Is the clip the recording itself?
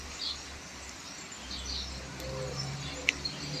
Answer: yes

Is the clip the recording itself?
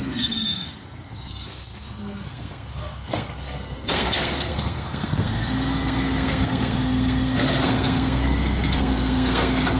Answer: no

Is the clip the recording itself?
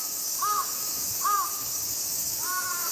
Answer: no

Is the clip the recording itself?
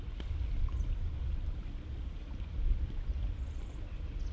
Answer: yes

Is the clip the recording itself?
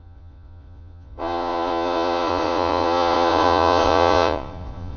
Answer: no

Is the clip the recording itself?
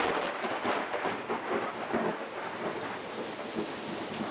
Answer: yes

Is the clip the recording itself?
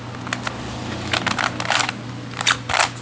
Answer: yes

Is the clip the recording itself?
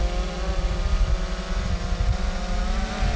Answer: yes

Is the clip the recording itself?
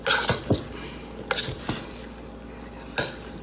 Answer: yes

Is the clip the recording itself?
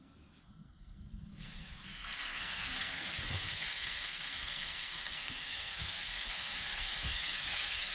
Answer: no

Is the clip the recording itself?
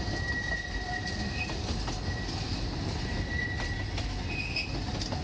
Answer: yes